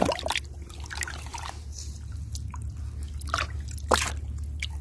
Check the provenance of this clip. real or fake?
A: real